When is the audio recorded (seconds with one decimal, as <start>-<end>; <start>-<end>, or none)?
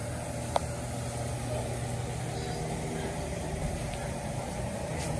0.0-3.1